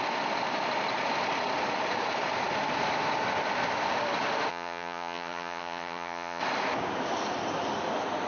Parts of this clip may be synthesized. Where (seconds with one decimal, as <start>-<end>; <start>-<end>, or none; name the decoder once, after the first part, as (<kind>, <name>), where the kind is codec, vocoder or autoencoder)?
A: 4.5-6.4 (vocoder, HiFi-GAN)